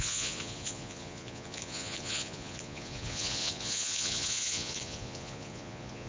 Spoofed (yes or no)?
yes